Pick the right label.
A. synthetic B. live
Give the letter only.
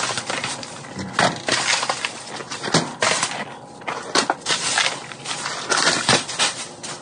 B